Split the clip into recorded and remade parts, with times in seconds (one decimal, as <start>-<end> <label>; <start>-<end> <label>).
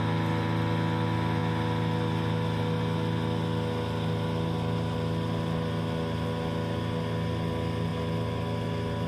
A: 0.0-9.1 recorded